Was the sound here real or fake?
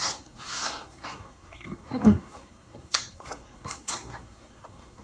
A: fake